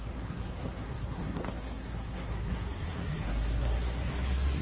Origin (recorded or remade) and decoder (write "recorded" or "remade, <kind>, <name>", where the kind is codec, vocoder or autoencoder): remade, codec, SNAC